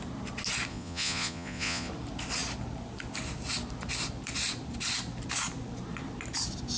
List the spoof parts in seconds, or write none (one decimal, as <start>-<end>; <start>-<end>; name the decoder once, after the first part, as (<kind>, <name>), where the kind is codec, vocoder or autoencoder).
0.7-1.9 (vocoder, Vocos)